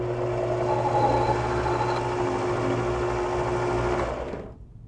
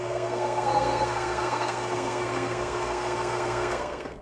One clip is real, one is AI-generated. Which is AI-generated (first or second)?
second